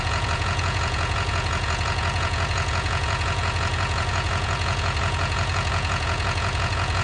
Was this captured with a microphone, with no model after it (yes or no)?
no